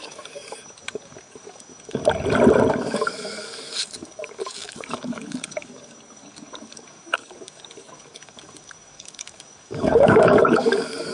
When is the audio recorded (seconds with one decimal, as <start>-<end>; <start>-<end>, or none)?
2.0-2.7